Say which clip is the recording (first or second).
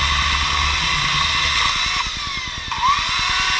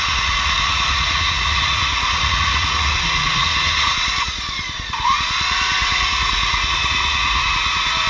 first